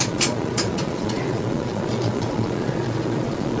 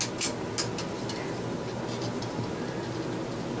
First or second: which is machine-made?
first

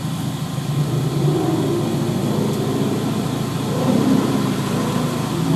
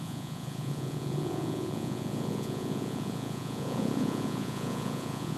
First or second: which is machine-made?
second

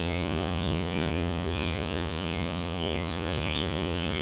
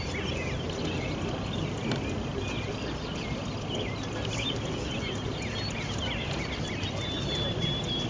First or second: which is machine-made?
first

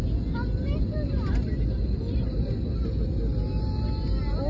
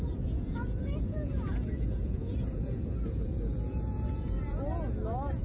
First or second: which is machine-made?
second